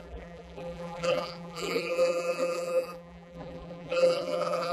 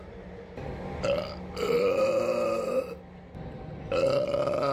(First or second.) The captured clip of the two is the second